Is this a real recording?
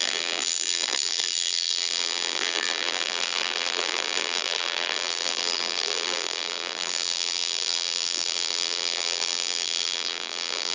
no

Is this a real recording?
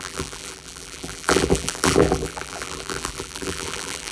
no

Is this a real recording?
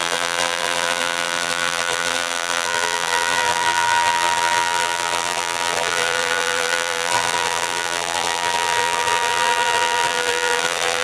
no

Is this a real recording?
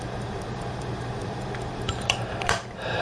no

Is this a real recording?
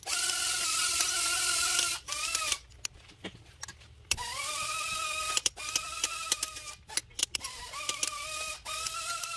yes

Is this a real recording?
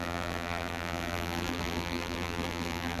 no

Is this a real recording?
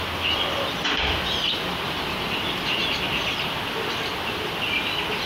yes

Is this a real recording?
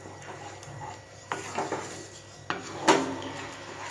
yes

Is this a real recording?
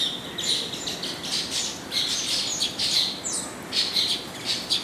yes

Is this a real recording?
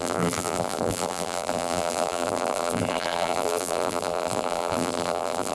no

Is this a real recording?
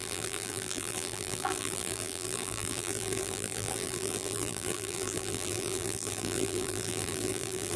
no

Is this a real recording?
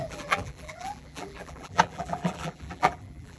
no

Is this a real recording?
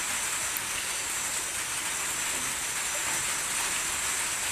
yes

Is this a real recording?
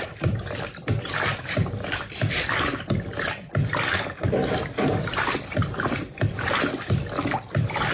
no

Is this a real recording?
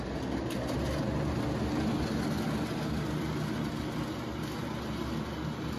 yes